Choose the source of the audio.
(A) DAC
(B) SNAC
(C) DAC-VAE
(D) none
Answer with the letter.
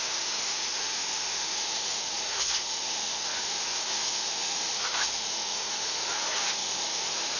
C